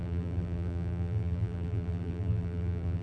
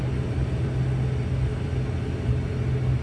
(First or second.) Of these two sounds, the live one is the second